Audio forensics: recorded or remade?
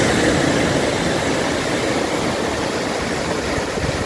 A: recorded